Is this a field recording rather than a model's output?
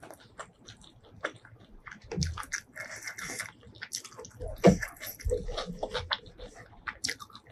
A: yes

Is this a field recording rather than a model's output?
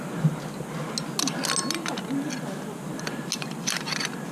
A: yes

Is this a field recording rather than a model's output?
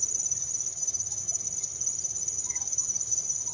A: no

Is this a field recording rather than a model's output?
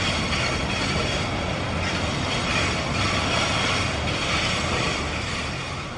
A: yes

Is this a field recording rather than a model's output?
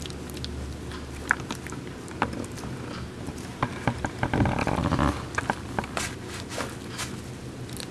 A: yes